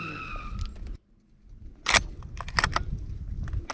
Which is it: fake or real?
real